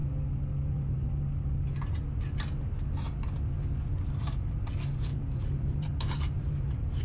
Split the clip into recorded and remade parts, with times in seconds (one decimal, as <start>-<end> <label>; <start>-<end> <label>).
0.0-0.6 recorded; 0.6-1.0 remade; 1.0-4.2 recorded; 4.2-7.0 remade